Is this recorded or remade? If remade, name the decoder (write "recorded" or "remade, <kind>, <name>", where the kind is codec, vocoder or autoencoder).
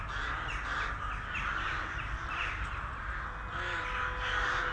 recorded